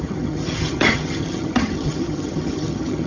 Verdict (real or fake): fake